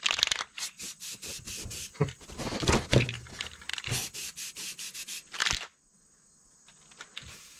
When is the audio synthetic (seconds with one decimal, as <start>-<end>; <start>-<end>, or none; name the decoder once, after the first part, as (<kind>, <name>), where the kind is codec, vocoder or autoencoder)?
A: none